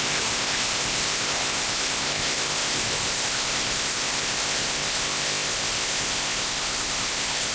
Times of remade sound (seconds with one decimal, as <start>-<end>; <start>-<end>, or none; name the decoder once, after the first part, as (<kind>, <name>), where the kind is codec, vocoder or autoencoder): 0.0-7.5 (codec, ZipCodec)